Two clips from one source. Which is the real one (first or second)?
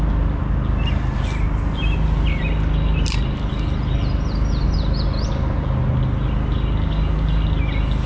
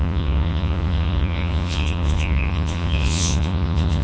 first